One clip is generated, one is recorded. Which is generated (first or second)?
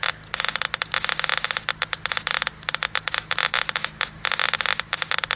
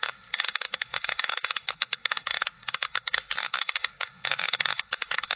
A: second